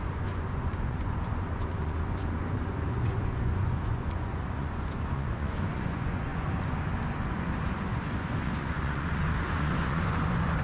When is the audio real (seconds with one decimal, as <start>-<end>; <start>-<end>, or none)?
none